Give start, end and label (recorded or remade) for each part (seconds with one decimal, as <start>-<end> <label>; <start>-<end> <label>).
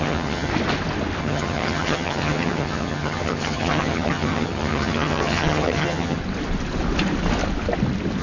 0.0-0.5 remade; 0.5-1.2 recorded; 1.2-6.2 remade; 6.2-8.2 recorded